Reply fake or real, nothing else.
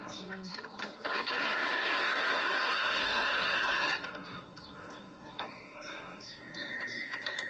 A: fake